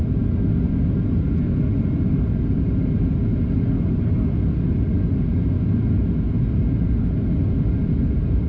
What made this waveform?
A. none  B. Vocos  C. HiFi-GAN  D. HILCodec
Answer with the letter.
A